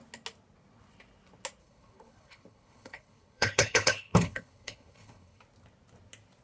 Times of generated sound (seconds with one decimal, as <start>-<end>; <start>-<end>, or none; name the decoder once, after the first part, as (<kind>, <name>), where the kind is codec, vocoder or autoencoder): 1.6-5.4 (codec, HILCodec)